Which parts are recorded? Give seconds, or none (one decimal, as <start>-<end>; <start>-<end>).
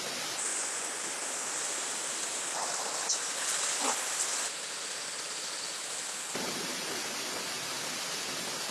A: 0.0-0.5; 1.0-8.7